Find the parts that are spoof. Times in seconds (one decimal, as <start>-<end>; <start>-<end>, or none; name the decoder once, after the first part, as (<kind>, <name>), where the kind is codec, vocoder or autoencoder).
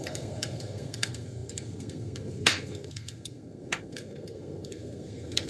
0.0-5.5 (codec, SNAC)